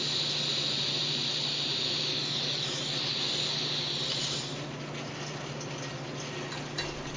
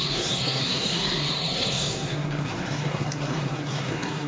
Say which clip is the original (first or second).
first